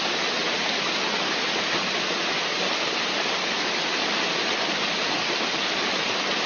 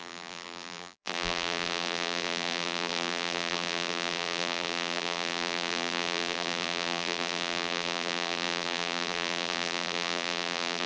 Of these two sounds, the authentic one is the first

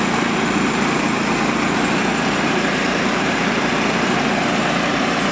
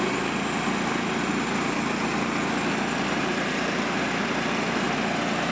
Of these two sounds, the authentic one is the second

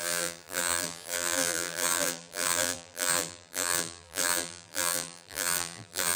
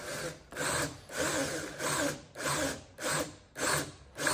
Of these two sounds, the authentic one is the second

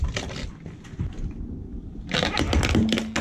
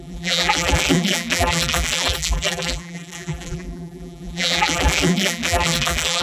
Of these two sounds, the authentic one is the first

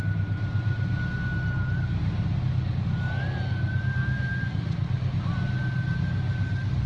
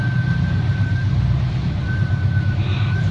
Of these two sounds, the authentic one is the first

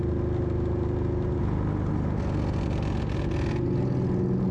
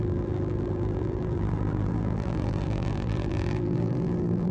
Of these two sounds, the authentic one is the first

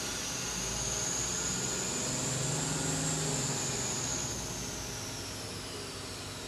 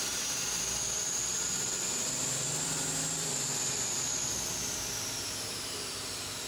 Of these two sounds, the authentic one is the first